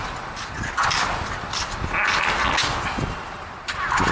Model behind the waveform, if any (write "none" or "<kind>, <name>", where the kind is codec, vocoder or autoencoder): none